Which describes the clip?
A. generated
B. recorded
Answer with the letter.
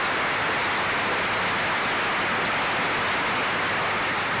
B